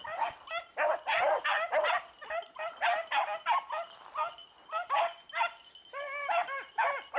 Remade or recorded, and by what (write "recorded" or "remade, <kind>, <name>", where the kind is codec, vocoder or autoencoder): recorded